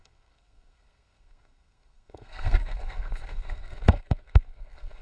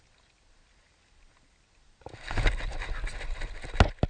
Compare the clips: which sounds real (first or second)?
second